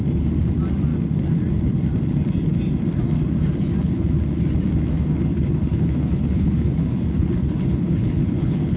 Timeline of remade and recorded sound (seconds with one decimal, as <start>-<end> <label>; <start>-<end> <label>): 0.0-4.9 recorded; 4.9-8.8 remade